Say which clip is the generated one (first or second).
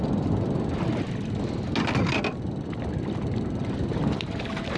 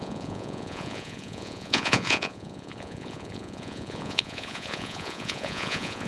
second